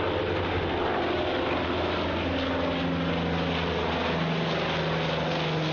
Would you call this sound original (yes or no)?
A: yes